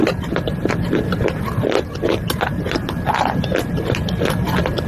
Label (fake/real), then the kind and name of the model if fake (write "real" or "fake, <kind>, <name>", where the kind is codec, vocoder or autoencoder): real